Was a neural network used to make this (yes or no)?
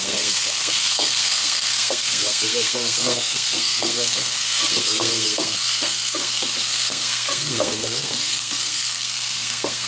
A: yes